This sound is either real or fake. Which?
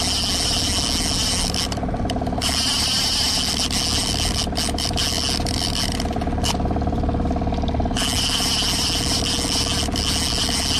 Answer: real